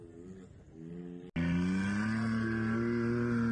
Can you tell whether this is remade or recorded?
recorded